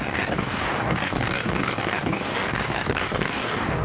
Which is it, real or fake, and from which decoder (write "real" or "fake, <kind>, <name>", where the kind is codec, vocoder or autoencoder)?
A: fake, codec, DAC